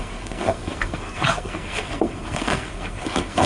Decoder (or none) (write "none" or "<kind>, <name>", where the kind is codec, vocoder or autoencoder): codec, SNAC